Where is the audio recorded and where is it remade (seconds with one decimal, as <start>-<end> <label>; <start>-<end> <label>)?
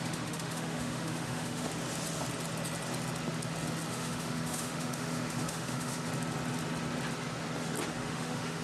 0.0-1.7 remade; 1.7-3.9 recorded; 3.9-6.1 remade; 6.1-7.9 recorded; 7.9-8.6 remade